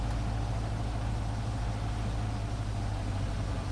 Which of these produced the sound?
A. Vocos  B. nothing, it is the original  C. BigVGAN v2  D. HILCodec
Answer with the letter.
B